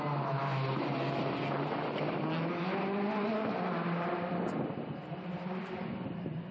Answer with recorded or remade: recorded